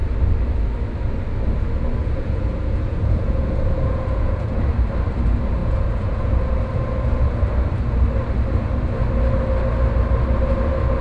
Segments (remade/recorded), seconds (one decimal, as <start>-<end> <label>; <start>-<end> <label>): 0.0-2.0 recorded; 2.0-4.7 remade; 4.7-5.6 recorded; 5.6-6.3 remade; 6.3-11.0 recorded